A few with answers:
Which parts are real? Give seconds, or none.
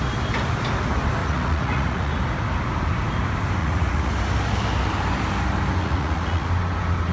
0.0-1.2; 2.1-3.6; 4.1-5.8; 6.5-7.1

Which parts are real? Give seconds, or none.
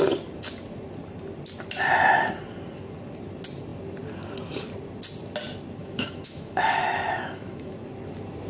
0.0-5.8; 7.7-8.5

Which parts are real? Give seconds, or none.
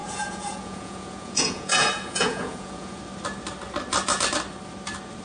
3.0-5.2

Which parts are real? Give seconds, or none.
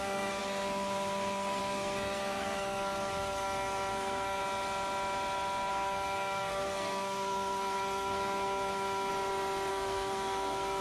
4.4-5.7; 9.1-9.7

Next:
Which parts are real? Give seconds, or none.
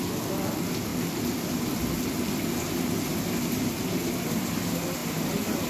0.0-5.7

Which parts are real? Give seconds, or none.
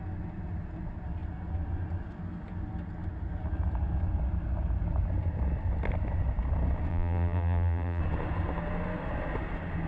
0.0-6.9; 8.0-9.9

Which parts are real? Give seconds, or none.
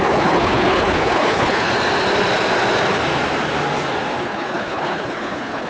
1.7-4.2